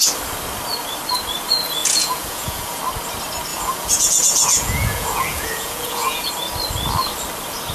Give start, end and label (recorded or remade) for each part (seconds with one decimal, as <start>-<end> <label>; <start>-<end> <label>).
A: 0.0-1.8 recorded; 1.8-2.8 remade; 2.8-3.5 recorded; 3.5-6.3 remade; 6.3-7.7 recorded